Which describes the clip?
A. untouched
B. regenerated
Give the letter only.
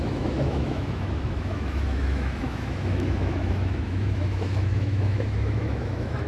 B